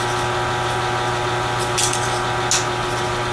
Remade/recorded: recorded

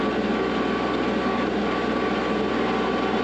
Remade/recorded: recorded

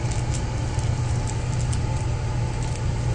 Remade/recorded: recorded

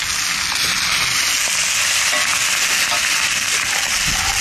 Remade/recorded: recorded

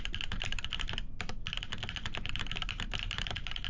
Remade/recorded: recorded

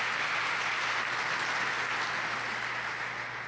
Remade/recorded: recorded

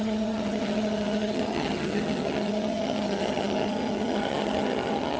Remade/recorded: remade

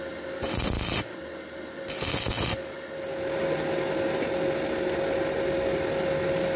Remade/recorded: recorded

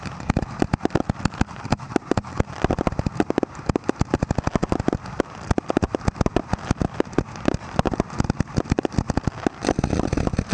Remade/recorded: recorded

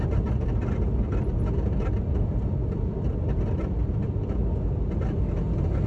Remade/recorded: recorded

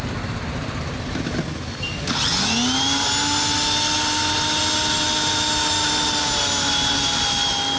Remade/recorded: recorded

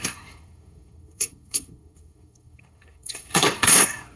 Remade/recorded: remade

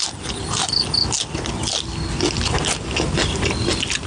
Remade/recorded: recorded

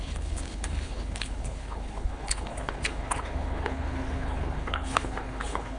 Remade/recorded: remade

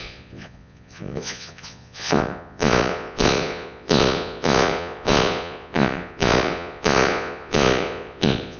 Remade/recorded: remade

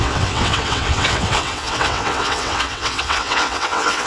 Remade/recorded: remade